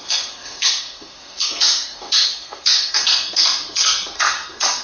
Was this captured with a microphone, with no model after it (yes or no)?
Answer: no